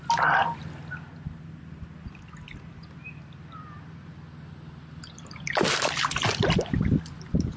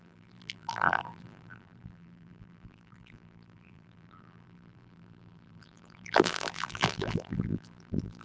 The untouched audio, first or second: first